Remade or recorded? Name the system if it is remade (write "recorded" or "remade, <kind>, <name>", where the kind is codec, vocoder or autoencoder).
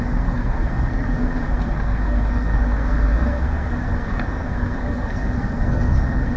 remade, codec, SNAC